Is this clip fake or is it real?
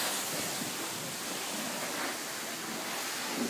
real